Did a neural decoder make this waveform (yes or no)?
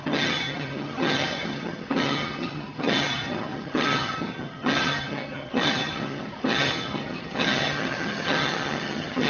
yes